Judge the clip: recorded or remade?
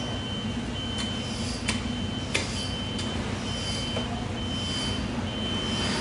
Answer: recorded